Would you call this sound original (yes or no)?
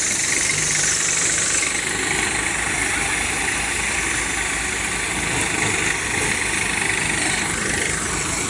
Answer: yes